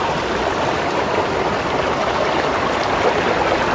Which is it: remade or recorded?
recorded